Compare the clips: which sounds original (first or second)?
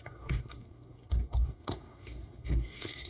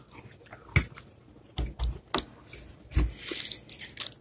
second